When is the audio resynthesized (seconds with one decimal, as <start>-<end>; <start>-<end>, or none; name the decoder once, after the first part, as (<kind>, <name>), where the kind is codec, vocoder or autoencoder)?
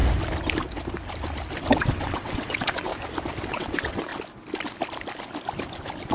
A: 1.7-2.9 (vocoder, WaveNeXt); 3.5-4.1